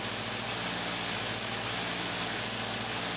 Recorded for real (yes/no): yes